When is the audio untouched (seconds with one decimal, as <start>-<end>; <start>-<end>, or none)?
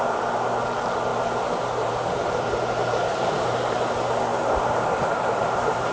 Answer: 0.0-1.1; 2.3-2.8; 3.9-4.3